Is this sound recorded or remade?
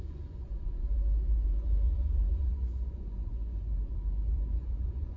remade